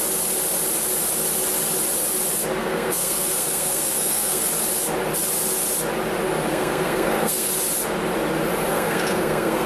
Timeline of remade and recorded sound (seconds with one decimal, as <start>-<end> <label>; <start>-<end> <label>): 0.0-2.6 recorded; 2.6-4.5 remade; 4.5-6.5 recorded; 6.5-7.5 remade; 7.5-8.7 recorded; 8.7-9.7 remade